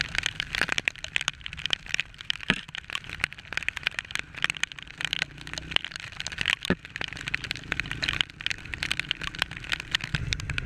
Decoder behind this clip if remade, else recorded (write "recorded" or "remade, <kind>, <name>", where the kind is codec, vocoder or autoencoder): remade, vocoder, BigVGAN v2